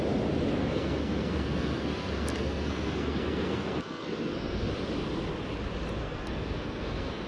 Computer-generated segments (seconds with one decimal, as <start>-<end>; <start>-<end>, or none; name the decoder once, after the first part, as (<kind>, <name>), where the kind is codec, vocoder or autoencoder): 0.6-4.7 (codec, SNAC); 6.0-7.3